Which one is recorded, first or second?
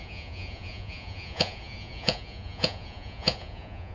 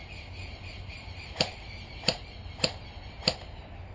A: second